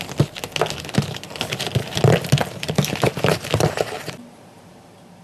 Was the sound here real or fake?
real